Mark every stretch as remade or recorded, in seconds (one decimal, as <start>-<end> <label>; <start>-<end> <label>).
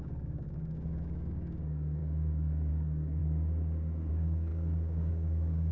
0.0-3.2 remade; 3.2-4.1 recorded; 4.1-5.7 remade